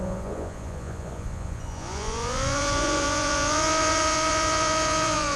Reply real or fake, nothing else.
fake